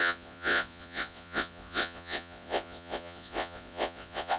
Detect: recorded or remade remade